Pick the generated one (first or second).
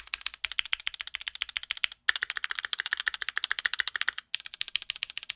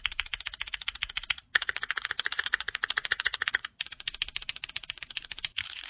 second